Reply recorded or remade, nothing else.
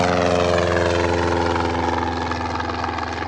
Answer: recorded